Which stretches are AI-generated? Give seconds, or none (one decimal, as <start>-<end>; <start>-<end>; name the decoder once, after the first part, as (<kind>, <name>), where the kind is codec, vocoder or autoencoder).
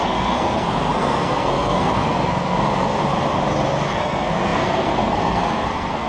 0.0-3.0 (codec, SNAC); 3.9-6.1